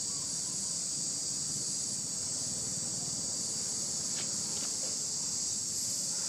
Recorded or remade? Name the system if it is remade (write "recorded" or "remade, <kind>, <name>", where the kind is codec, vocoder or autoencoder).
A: recorded